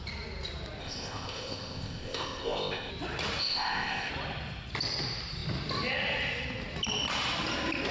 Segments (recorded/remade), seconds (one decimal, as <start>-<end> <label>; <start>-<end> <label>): 0.0-0.8 recorded; 0.8-2.9 remade; 2.9-3.4 recorded; 3.4-4.1 remade; 4.1-7.9 recorded